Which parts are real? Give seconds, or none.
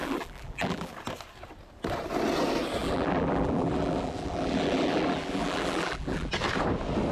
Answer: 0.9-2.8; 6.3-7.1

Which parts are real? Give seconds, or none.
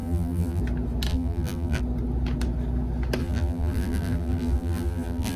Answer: 0.6-1.1; 1.8-3.2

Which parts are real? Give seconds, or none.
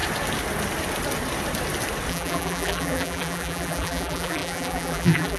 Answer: 0.0-2.1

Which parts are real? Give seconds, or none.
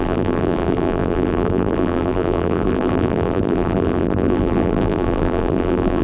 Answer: none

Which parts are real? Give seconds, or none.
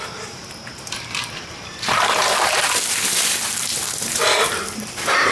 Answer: none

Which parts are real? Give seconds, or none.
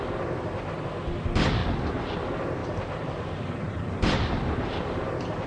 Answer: 0.0-2.6; 5.1-5.5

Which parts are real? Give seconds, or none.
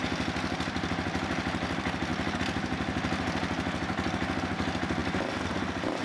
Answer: 0.0-6.0